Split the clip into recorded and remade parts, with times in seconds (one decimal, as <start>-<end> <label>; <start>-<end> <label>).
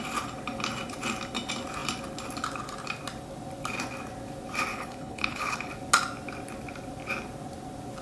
0.0-4.7 recorded; 4.7-5.7 remade; 5.7-8.0 recorded